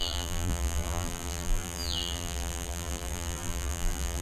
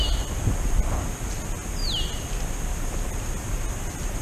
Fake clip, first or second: first